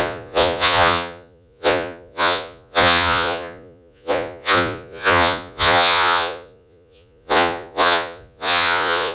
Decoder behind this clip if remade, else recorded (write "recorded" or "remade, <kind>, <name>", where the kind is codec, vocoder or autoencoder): remade, vocoder, Vocos